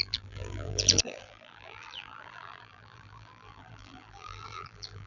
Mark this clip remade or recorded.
remade